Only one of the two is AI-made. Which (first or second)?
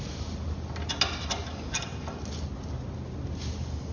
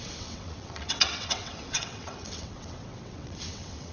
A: second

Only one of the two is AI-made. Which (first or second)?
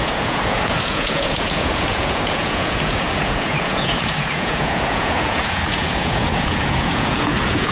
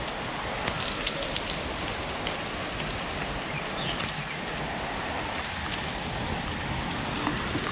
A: first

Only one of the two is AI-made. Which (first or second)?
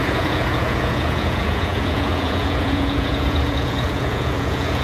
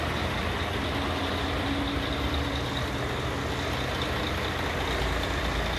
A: first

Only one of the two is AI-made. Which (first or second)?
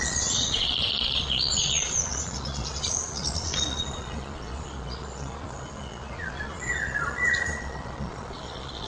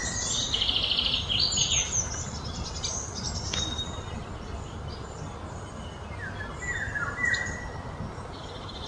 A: first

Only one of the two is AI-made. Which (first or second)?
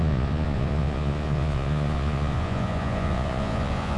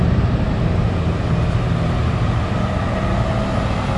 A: first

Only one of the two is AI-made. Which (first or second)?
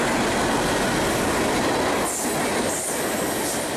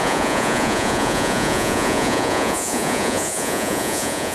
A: second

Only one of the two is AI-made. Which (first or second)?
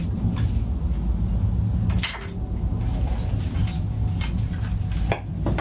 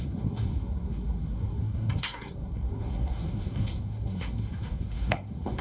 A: second